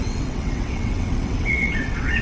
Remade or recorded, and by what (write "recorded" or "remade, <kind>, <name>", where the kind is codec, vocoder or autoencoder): remade, vocoder, WaveNeXt